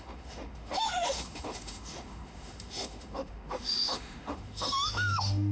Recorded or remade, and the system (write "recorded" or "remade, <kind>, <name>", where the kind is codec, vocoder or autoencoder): remade, autoencoder, DAC-VAE